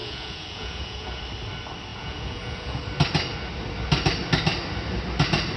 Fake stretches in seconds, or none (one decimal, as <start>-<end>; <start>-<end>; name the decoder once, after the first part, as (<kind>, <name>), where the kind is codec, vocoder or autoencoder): 0.0-1.2 (vocoder, Vocos); 1.9-2.8